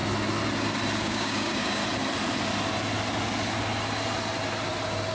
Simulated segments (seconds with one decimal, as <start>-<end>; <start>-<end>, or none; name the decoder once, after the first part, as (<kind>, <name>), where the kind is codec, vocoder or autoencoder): 1.0-1.8 (codec, DAC)